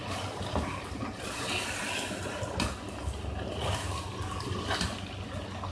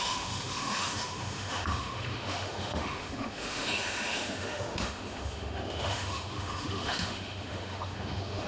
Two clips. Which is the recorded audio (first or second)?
first